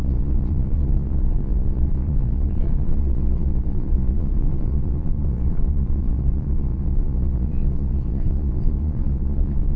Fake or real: fake